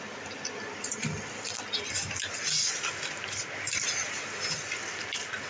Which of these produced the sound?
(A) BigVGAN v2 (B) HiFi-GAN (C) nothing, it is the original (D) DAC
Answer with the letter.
C